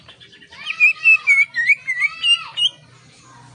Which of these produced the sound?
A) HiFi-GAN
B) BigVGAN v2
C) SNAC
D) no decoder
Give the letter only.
D